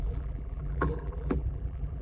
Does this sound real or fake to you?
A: fake